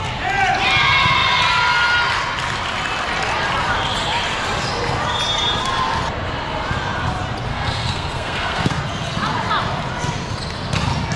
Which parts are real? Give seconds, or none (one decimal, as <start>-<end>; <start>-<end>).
0.0-7.5; 8.8-11.2